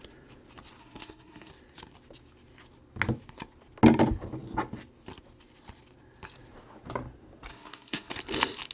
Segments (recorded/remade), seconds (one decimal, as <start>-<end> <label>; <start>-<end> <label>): 0.0-0.8 recorded; 0.8-1.5 remade; 1.5-7.5 recorded; 7.5-8.1 remade; 8.1-8.7 recorded